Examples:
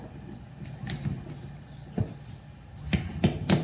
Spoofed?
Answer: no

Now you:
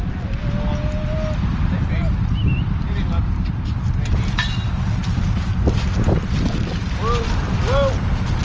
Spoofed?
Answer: no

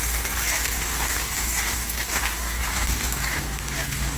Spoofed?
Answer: yes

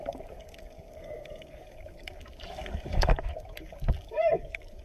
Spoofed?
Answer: yes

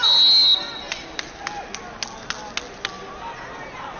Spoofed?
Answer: no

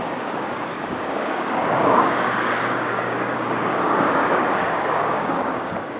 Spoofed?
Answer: yes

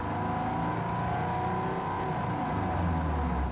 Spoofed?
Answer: no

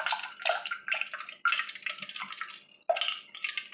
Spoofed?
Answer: no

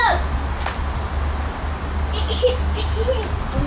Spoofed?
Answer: no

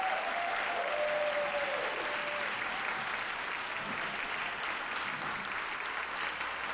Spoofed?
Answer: no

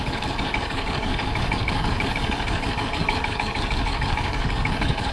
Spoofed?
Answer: yes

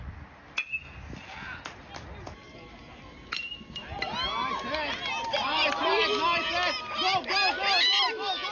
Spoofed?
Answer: no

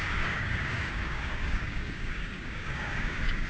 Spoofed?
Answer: yes